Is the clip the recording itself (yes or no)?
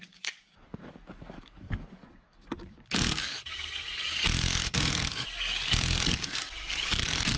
no